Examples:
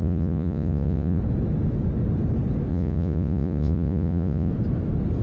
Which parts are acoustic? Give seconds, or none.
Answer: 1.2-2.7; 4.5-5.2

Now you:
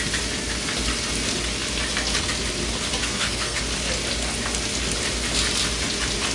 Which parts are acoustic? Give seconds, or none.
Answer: 0.0-3.0; 3.6-6.3

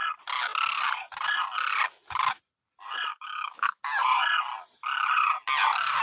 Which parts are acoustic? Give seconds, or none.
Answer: 0.0-3.1; 3.8-6.0

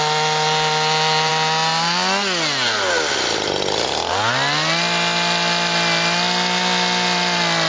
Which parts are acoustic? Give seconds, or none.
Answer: 0.0-7.7

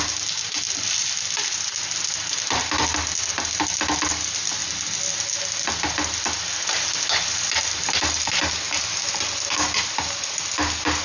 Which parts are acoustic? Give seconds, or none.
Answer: 0.0-11.0

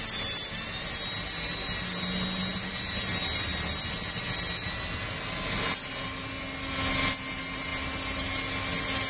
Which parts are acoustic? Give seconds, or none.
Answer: 0.0-9.1

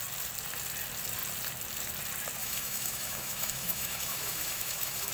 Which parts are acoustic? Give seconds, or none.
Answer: 0.0-2.4

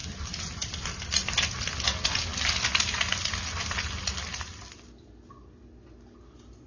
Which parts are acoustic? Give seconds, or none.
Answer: 0.0-6.7